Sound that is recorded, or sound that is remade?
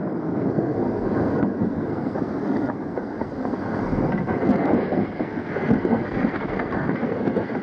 remade